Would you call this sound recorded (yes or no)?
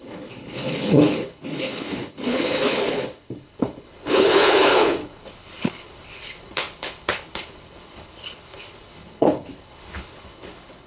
no